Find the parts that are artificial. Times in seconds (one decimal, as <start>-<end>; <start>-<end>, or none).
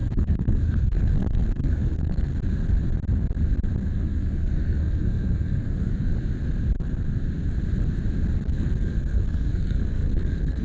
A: 0.0-2.3; 3.8-6.1; 8.5-10.6